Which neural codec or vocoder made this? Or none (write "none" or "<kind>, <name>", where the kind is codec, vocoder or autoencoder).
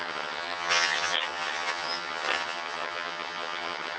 vocoder, HiFi-GAN